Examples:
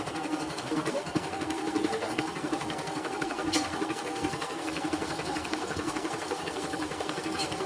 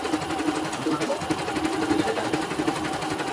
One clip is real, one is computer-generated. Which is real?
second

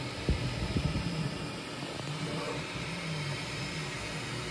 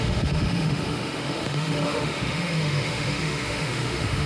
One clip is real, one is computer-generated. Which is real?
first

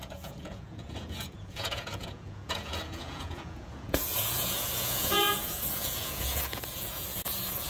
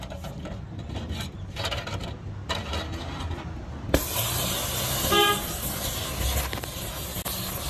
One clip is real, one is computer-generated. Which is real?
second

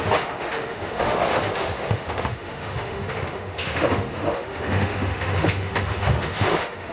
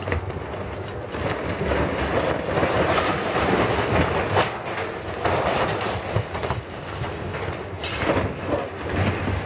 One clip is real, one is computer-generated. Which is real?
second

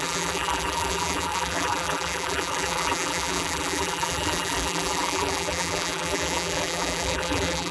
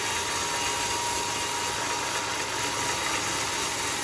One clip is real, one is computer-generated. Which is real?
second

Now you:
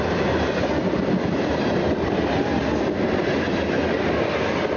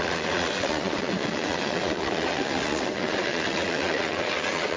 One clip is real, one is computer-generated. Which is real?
first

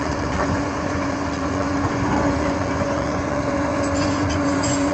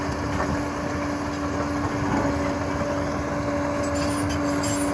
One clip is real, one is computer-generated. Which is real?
second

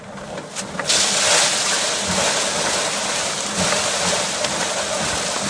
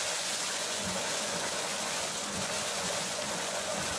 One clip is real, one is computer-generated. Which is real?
first